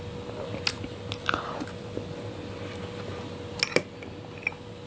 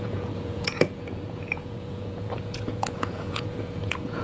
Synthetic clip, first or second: second